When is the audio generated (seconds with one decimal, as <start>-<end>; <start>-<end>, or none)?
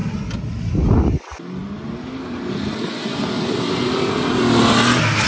none